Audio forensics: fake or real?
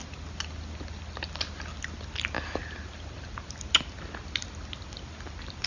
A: real